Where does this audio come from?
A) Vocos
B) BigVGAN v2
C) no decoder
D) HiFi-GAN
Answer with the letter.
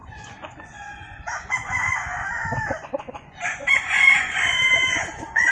A